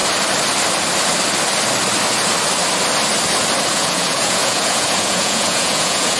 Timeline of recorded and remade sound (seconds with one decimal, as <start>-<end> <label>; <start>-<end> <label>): 0.0-3.7 recorded; 3.7-6.2 remade